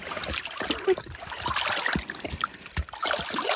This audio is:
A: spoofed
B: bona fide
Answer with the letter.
B